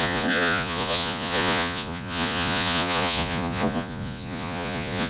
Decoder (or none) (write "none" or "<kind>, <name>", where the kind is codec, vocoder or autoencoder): vocoder, Vocos